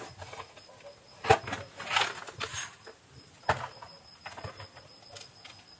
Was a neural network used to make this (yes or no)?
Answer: no